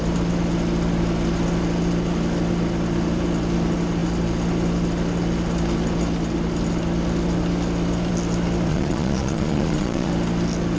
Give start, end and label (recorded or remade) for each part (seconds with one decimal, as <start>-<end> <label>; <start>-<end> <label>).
0.0-8.7 recorded; 8.7-10.1 remade; 10.1-10.8 recorded